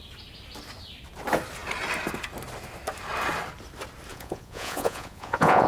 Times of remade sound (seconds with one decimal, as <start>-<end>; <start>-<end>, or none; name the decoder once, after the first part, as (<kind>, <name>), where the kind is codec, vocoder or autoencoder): 4.1-5.7 (vocoder, Vocos)